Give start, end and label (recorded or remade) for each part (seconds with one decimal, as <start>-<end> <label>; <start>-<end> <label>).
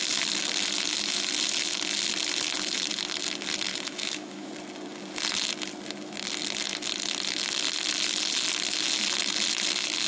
0.0-3.7 recorded; 3.7-4.5 remade; 4.5-10.1 recorded